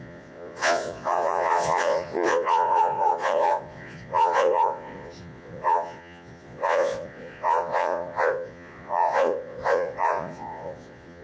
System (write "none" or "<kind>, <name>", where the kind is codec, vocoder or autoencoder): vocoder, Vocos